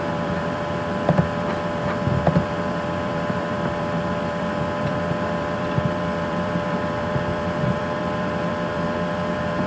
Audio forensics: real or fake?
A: fake